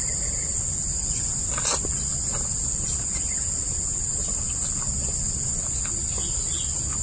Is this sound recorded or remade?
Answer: recorded